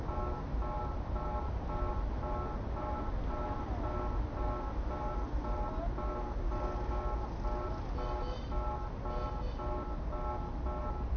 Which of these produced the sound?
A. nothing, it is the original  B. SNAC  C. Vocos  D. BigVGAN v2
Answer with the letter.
A